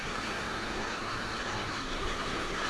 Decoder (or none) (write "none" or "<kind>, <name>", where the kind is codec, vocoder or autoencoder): codec, SNAC